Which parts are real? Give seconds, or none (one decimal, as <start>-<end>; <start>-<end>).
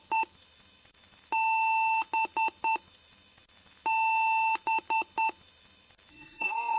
0.0-6.1